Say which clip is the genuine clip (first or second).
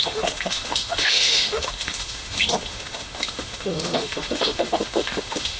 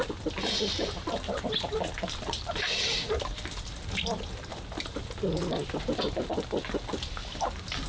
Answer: second